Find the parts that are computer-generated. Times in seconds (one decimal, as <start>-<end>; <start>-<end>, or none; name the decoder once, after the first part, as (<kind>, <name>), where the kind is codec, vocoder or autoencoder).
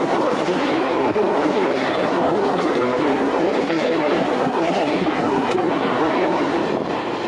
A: 0.0-6.6 (codec, SNAC)